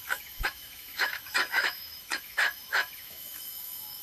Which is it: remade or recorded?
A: remade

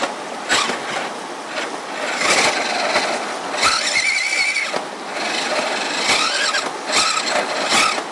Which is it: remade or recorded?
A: recorded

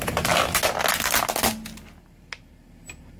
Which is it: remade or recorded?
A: recorded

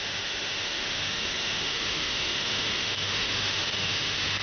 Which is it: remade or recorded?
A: remade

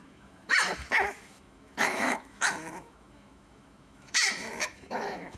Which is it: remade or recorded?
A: remade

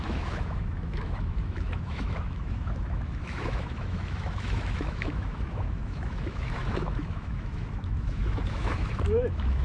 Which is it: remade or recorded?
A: remade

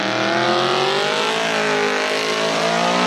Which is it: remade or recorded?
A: recorded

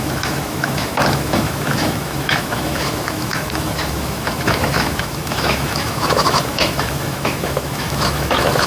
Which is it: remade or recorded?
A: remade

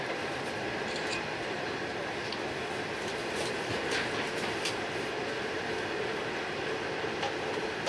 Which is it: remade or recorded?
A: recorded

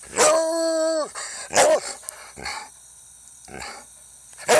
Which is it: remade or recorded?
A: recorded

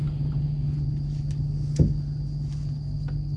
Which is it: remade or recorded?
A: recorded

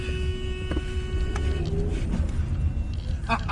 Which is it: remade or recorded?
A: recorded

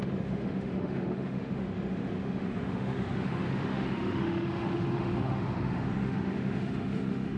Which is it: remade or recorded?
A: remade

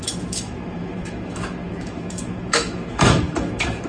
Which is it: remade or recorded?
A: remade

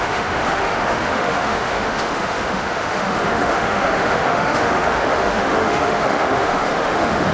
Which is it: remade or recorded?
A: remade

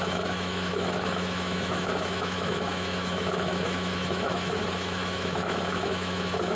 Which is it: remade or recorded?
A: remade